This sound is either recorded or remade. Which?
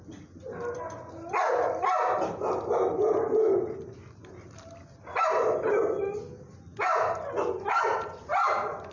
recorded